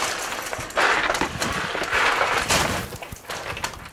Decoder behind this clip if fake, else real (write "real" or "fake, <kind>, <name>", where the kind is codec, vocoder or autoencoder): real